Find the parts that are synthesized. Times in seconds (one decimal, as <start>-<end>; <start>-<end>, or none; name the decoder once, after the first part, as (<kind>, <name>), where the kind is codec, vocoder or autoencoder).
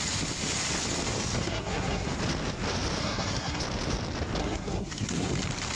1.4-2.1 (codec, SNAC); 3.0-3.6; 4.4-5.3